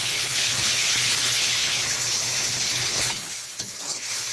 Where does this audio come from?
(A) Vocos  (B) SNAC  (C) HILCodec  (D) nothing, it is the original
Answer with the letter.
C